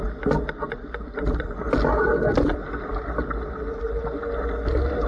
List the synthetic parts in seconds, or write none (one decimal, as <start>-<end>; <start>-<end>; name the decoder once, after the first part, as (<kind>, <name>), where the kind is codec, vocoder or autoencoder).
none